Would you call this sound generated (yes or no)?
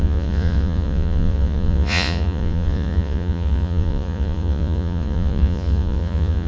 yes